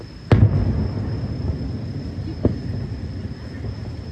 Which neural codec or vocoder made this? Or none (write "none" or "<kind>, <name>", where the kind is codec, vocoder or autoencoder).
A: none